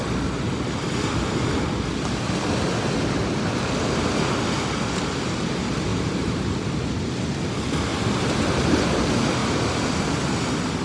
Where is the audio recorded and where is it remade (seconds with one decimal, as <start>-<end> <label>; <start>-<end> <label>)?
0.0-5.9 recorded; 5.9-6.5 remade; 6.5-7.9 recorded; 7.9-9.0 remade; 9.0-9.4 recorded; 9.4-10.1 remade; 10.1-10.8 recorded